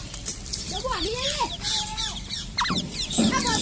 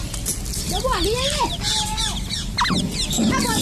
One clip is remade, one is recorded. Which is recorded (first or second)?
second